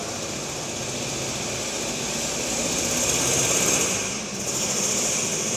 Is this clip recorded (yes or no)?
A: yes